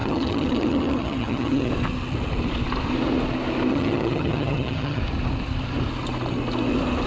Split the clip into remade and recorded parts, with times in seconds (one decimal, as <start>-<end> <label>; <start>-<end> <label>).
0.0-1.7 remade; 1.7-3.7 recorded; 3.7-5.0 remade; 5.0-7.1 recorded